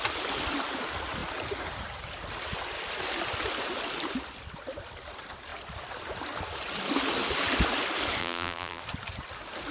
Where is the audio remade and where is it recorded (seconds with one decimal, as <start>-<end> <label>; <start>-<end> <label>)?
0.0-8.2 recorded; 8.2-8.8 remade; 8.8-9.7 recorded